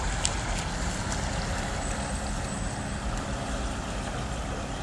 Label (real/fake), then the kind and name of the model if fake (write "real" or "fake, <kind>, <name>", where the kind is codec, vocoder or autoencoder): real